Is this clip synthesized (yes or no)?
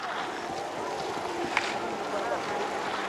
no